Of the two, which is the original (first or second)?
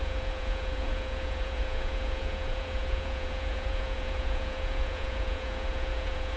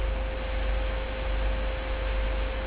second